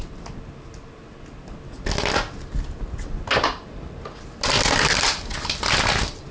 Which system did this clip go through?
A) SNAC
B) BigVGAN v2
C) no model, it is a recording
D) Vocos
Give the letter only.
C